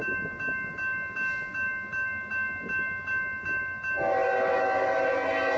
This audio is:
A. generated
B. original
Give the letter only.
B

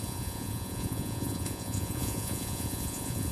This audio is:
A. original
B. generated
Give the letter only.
B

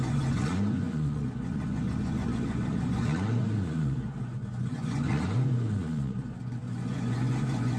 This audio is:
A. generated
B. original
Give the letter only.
A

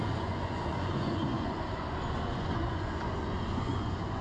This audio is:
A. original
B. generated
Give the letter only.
B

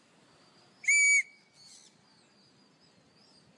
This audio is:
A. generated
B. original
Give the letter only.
B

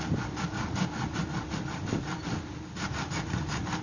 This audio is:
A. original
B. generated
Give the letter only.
A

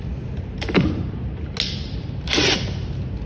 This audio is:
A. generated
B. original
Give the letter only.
B